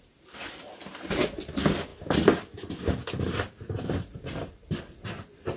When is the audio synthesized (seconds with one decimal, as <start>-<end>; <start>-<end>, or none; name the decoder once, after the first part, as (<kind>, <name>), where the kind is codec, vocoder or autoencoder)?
none